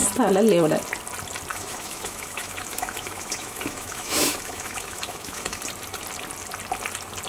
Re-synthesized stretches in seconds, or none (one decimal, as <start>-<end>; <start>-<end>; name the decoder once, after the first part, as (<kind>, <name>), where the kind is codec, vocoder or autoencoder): 1.5-5.6 (autoencoder, DAC-VAE)